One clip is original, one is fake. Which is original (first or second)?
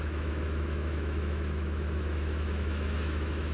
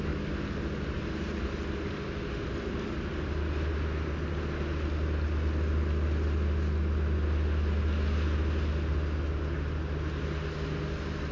second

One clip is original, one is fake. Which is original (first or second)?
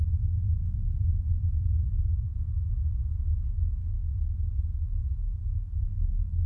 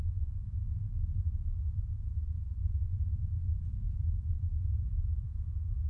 first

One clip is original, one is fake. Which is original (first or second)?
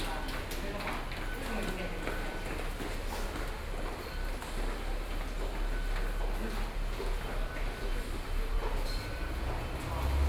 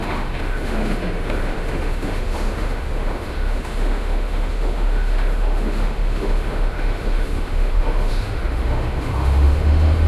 first